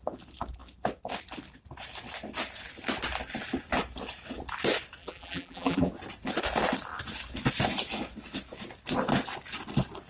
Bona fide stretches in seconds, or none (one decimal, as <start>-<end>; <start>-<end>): 0.0-5.0; 5.9-10.1